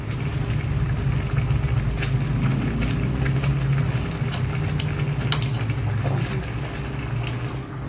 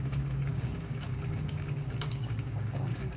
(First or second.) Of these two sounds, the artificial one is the second